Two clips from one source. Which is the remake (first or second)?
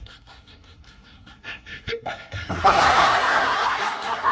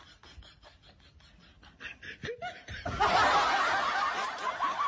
first